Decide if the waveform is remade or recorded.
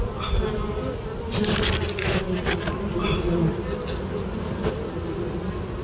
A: recorded